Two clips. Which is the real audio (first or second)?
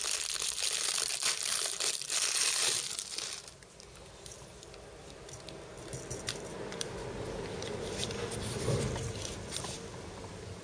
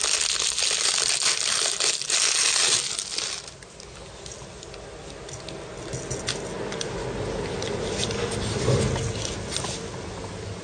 second